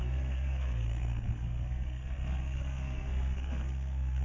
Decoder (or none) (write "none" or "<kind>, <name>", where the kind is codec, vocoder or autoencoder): codec, SNAC